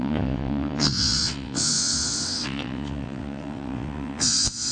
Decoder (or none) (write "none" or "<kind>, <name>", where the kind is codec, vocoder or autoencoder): vocoder, WaveNeXt